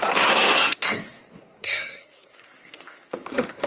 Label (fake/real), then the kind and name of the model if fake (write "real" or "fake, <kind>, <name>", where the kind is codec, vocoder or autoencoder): fake, codec, SNAC